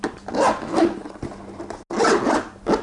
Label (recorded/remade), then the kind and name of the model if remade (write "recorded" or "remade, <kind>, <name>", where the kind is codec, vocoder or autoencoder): recorded